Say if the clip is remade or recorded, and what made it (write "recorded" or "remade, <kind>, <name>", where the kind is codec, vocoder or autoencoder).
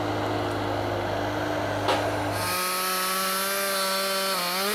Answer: recorded